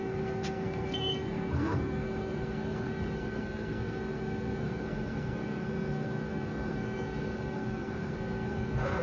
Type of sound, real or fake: fake